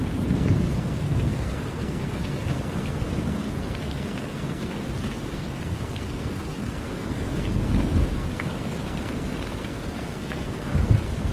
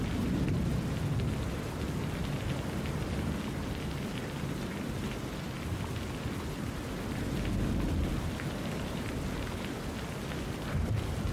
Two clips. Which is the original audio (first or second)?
second